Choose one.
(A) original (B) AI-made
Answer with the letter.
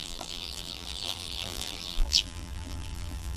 B